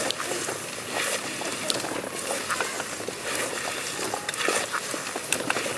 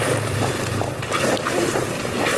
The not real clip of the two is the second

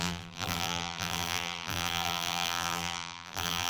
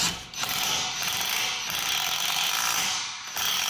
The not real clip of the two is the first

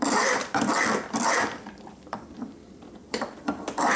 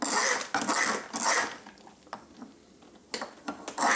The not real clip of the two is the first